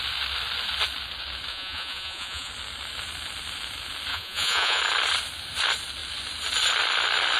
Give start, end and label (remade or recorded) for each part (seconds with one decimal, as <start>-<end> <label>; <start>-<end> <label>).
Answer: 0.0-1.5 recorded; 1.5-2.5 remade; 2.5-4.1 recorded; 4.1-4.8 remade; 4.8-7.4 recorded